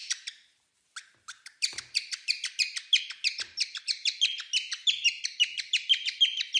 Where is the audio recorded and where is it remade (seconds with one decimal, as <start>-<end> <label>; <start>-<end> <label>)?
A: 0.0-6.6 recorded